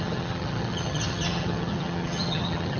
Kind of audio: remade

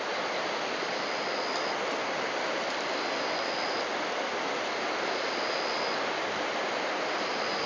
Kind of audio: recorded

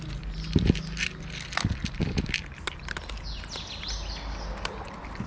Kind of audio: recorded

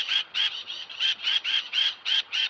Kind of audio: remade